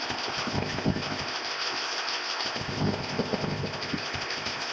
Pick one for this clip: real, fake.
fake